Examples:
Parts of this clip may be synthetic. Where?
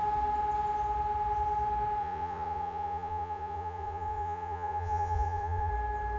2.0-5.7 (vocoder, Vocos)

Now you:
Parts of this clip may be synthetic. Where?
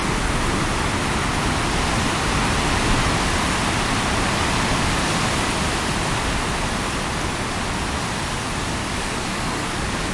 8.8-10.1 (codec, DAC)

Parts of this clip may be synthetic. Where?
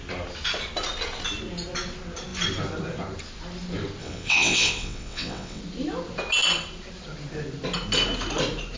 4.0-5.6 (vocoder, WaveNeXt)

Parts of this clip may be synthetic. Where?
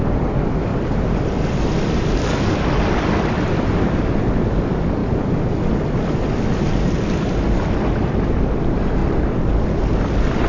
none